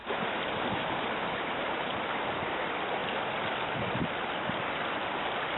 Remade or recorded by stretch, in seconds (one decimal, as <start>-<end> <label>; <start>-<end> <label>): 0.0-2.0 remade; 2.0-5.6 recorded